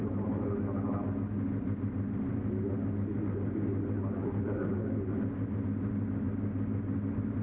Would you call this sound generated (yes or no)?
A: no